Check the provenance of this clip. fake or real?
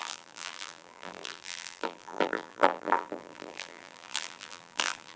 fake